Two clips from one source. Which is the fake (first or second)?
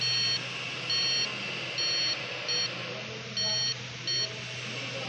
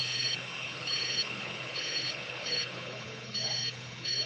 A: second